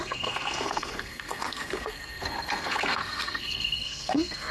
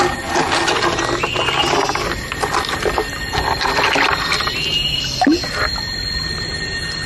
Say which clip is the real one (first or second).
second